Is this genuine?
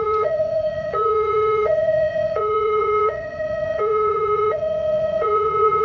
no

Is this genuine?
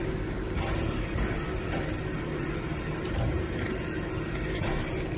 yes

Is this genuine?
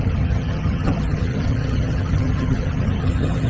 no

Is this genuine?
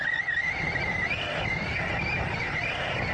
yes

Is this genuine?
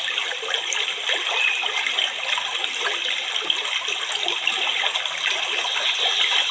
yes